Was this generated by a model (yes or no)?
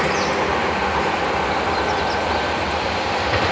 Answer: no